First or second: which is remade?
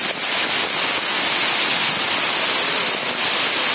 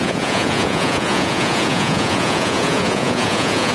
second